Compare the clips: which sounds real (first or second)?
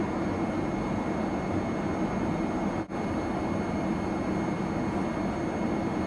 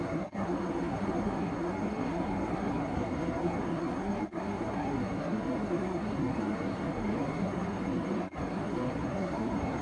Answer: first